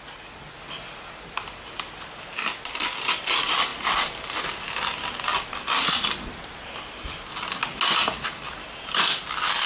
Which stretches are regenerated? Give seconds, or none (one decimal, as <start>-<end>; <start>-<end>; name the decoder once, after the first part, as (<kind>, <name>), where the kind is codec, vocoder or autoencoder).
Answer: none